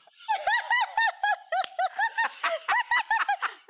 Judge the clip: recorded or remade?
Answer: recorded